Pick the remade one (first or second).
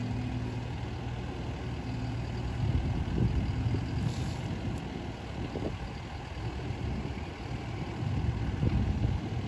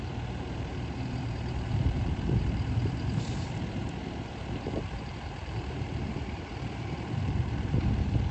second